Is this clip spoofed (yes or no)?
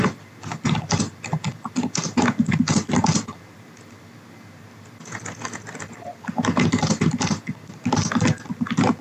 no